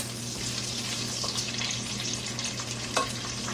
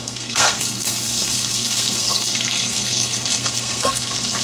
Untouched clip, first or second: first